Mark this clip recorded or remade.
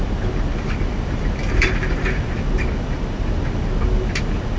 recorded